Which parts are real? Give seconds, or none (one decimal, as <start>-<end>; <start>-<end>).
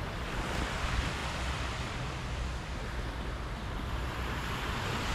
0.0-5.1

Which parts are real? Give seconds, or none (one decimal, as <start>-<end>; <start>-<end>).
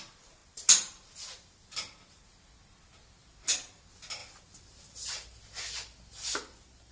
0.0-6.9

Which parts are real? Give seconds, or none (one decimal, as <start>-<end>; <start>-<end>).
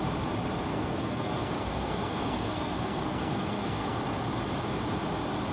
0.0-0.7; 4.0-5.5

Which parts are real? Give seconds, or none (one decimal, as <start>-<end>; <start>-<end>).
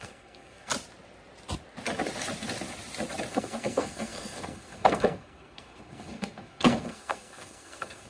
0.7-3.3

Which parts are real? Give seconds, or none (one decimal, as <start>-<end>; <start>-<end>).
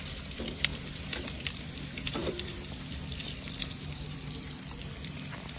none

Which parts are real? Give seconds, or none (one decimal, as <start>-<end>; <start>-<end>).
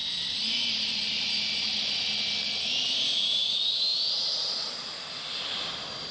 1.6-3.9; 5.4-6.1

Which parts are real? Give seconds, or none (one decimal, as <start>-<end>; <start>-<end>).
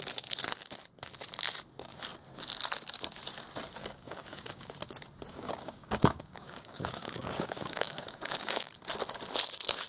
0.0-3.8; 4.7-5.3; 8.7-9.9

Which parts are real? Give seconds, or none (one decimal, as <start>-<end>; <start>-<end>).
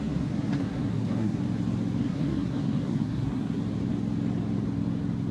1.4-2.0; 3.6-5.3